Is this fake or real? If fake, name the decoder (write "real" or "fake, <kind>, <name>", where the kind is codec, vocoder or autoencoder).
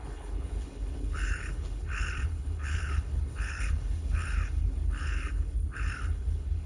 fake, codec, HILCodec